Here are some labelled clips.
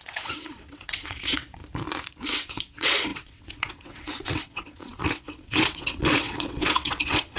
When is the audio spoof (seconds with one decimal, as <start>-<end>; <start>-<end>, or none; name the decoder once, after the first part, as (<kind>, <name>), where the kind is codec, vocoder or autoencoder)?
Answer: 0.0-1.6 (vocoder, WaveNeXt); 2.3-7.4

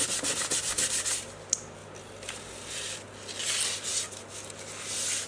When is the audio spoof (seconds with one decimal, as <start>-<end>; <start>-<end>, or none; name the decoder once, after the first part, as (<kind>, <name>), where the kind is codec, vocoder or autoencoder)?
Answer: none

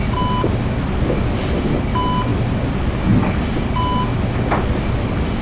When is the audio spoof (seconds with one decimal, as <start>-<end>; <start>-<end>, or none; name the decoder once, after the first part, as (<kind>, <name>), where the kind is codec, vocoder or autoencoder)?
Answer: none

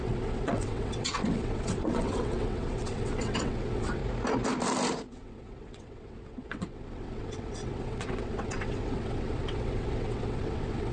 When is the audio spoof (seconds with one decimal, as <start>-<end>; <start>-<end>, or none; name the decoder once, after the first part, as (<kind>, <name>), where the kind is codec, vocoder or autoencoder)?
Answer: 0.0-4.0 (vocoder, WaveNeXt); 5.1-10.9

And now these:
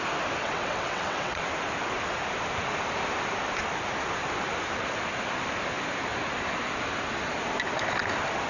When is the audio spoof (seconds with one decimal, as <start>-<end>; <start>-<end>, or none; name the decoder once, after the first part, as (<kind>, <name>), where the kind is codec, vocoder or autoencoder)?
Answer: 0.4-1.4 (vocoder, WaveNeXt)

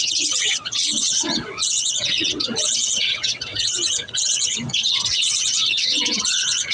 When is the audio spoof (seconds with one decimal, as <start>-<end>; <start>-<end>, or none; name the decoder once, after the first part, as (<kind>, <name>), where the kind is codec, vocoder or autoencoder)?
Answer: 0.0-6.7 (vocoder, WaveNeXt)

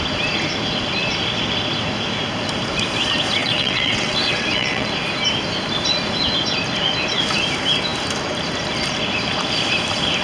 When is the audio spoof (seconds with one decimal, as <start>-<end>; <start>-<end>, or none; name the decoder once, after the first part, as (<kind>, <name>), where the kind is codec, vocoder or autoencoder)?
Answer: 3.4-4.9 (vocoder, WaveNeXt)